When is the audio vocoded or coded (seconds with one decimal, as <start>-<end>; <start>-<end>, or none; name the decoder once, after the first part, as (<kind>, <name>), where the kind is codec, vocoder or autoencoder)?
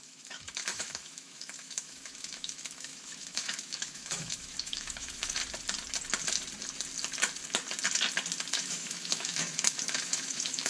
0.0-5.4 (autoencoder, DAC-VAE); 8.5-10.7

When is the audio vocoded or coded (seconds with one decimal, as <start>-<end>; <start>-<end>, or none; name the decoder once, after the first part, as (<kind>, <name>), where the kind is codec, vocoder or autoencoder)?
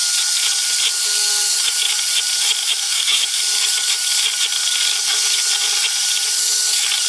2.6-3.4 (autoencoder, DAC-VAE)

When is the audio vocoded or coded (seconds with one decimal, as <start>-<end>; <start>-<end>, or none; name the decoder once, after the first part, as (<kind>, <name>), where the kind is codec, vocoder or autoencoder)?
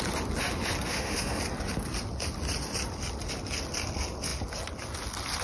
0.9-1.4 (autoencoder, DAC-VAE)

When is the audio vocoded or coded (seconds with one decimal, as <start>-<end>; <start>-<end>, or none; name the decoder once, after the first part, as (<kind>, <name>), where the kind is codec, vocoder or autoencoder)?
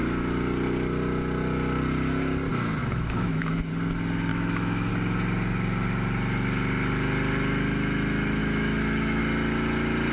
2.8-3.7 (autoencoder, DAC-VAE); 4.3-4.9; 8.4-9.2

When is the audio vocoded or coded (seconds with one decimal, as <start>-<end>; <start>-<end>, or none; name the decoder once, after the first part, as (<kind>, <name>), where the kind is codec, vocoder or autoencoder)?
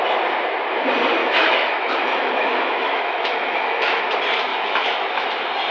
1.2-4.0 (autoencoder, DAC-VAE); 4.5-5.1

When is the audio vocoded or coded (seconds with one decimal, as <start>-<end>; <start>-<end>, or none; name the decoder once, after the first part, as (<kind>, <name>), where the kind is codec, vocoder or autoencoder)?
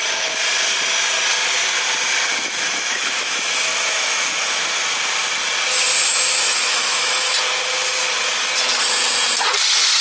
2.3-4.6 (autoencoder, DAC-VAE); 6.1-7.3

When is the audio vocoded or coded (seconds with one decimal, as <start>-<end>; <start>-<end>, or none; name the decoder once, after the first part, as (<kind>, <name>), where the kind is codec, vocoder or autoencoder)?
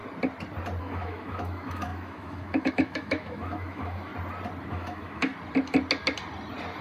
0.8-4.1 (autoencoder, DAC-VAE); 4.7-5.3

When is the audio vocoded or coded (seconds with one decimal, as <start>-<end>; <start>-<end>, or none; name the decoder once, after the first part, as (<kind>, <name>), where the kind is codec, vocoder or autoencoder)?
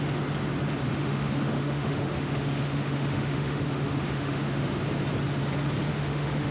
0.9-4.8 (autoencoder, DAC-VAE); 5.9-6.5